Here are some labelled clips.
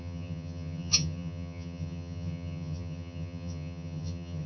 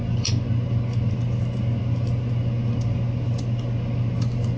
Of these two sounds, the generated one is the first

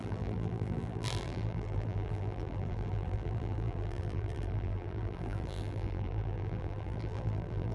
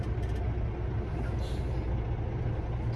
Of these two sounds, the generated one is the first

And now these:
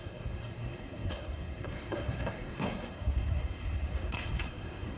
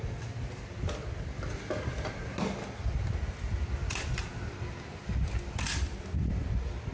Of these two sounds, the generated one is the first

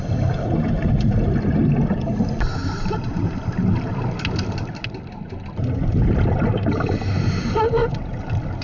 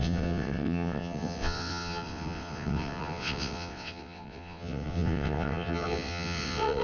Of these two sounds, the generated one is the second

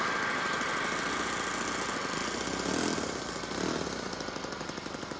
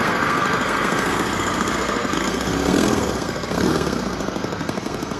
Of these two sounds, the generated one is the second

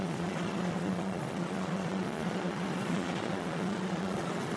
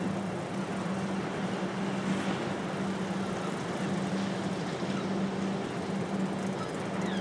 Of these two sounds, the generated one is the first